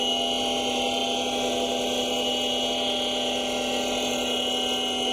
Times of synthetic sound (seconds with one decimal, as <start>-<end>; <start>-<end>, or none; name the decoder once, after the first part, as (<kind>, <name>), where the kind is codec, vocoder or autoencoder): none